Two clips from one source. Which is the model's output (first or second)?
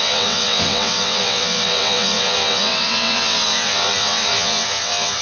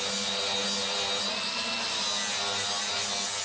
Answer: first